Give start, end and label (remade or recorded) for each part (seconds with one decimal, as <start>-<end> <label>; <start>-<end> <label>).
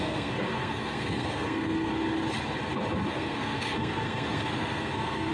0.0-1.9 remade; 1.9-3.1 recorded; 3.1-5.3 remade